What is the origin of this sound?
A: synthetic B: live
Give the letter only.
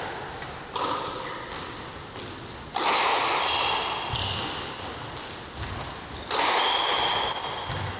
B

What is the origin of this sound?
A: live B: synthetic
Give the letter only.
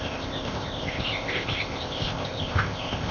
B